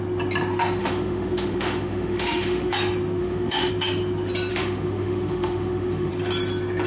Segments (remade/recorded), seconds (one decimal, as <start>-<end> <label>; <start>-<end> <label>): 0.0-0.8 recorded; 0.8-2.7 remade; 2.7-3.2 recorded; 3.2-3.7 remade; 3.7-4.5 recorded; 4.5-6.1 remade; 6.1-6.9 recorded